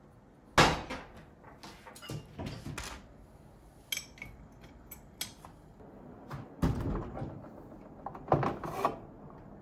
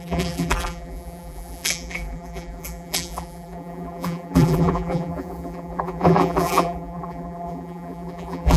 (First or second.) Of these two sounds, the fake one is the second